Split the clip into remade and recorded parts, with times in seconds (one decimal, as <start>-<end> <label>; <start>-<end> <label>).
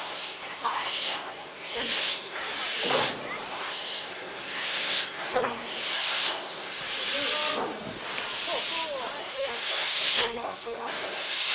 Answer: 0.0-2.4 remade; 2.4-3.5 recorded; 3.5-6.8 remade; 6.8-9.2 recorded; 9.2-11.5 remade